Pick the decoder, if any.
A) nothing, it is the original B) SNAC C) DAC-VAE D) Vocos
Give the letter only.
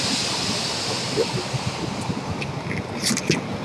A